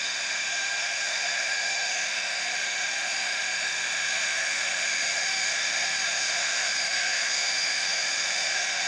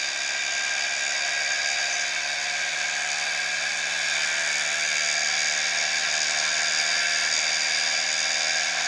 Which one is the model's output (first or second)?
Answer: first